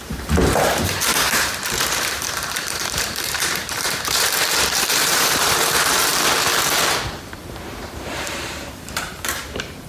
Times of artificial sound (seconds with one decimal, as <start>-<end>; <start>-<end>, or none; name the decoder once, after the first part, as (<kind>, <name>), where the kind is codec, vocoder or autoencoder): 0.0-6.1 (vocoder, BigVGAN v2); 7.4-9.9

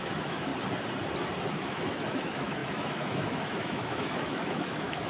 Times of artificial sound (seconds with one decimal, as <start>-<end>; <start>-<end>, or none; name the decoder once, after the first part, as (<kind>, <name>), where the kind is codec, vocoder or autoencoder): 0.0-0.5 (autoencoder, DAC-VAE); 1.5-5.1